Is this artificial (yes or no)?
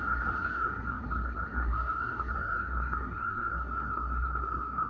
yes